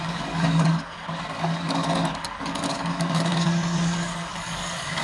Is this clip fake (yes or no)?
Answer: yes